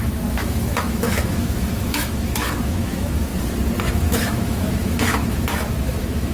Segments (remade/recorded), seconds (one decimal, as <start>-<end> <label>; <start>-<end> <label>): 0.0-3.3 remade; 3.3-3.9 recorded; 3.9-6.3 remade